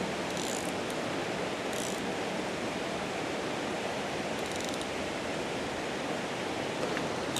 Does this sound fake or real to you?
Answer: real